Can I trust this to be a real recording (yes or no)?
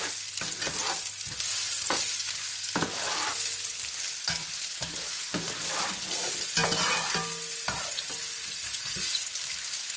yes